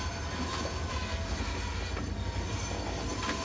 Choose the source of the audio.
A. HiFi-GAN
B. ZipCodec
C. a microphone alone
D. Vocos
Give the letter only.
C